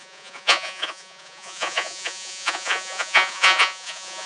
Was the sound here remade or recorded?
remade